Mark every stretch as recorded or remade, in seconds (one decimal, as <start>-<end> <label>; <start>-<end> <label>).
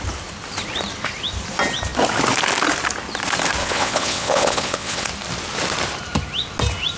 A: 0.0-3.6 recorded; 3.6-5.1 remade; 5.1-7.0 recorded